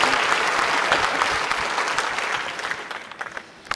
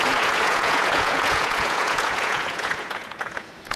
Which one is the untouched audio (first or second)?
first